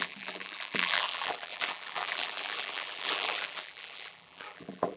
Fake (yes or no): yes